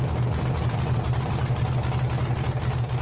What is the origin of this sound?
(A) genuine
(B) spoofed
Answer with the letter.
A